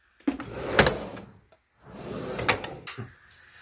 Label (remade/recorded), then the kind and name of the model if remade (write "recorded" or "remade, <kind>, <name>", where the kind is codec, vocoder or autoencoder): recorded